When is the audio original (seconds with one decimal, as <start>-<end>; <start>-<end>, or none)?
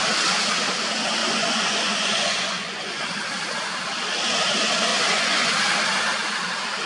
0.0-1.2; 3.0-4.9; 5.5-6.9